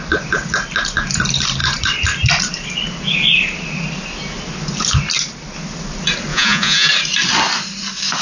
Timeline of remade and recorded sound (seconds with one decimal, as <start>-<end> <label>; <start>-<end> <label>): 0.0-6.3 recorded; 6.3-6.9 remade; 6.9-8.2 recorded